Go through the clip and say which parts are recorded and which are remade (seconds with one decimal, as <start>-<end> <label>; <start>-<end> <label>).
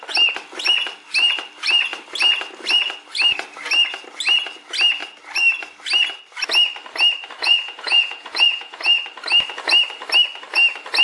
0.0-7.4 recorded; 7.4-8.8 remade; 8.8-11.0 recorded